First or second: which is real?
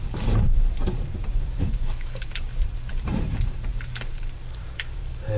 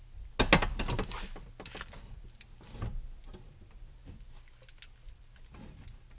second